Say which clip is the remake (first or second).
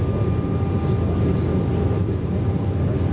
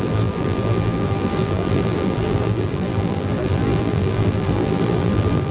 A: second